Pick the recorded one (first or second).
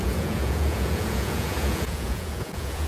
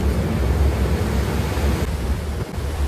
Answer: second